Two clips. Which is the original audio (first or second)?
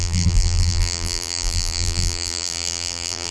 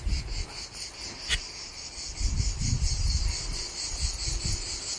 second